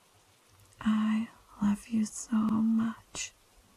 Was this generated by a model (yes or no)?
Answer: no